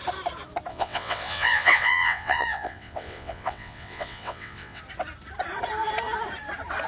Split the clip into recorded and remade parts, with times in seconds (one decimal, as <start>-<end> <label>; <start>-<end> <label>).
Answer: 0.0-0.7 recorded; 0.7-4.8 remade; 4.8-6.9 recorded